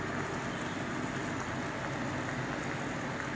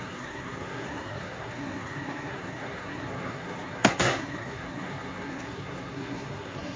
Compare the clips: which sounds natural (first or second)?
first